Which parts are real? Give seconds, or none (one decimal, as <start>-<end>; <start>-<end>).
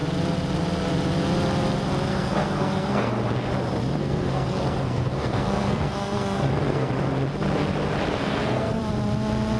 0.0-2.1; 3.1-4.0; 6.9-8.2; 8.8-9.6